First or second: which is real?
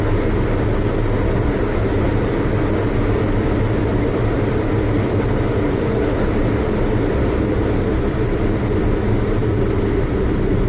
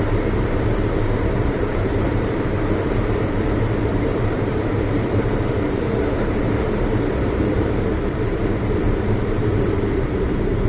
first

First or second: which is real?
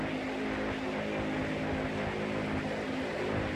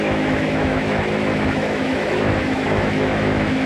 first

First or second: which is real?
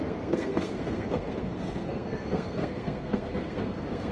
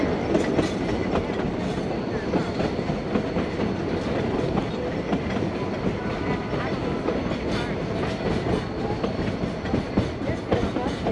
second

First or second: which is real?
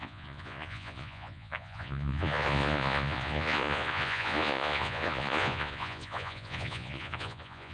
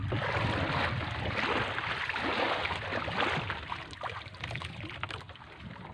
second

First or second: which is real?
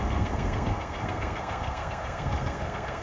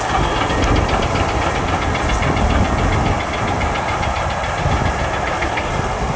second